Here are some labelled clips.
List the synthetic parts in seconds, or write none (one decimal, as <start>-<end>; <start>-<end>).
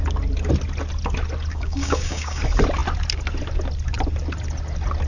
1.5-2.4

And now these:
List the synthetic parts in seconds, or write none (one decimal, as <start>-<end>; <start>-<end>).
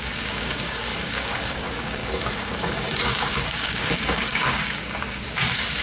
0.0-5.8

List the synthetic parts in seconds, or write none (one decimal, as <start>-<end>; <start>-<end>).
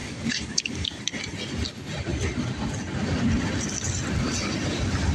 0.0-1.0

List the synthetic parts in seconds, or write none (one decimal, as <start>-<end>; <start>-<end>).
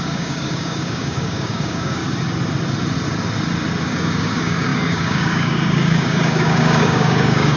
0.0-2.0; 3.8-7.6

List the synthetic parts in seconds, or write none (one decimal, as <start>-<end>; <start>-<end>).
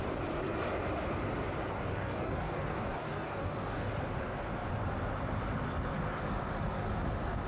1.7-4.0